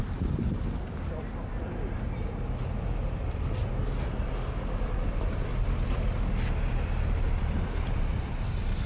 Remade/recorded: recorded